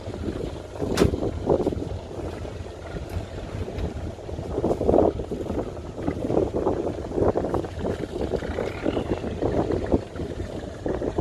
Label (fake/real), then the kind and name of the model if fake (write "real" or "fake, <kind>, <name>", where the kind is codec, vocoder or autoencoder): real